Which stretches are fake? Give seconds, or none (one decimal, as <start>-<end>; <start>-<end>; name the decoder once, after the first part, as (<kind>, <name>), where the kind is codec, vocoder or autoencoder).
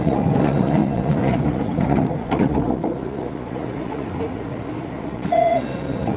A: 0.0-6.2 (vocoder, Vocos)